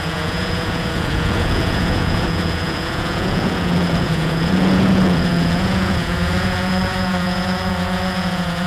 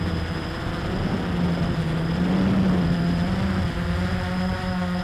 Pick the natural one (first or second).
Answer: second